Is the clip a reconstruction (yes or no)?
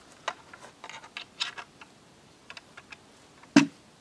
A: no